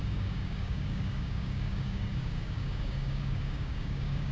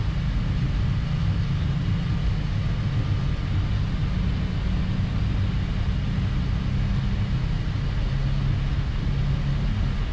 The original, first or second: second